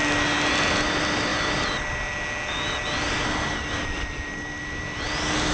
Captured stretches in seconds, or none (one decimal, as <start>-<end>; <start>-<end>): 0.0-5.5